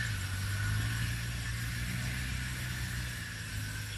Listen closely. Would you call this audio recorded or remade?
recorded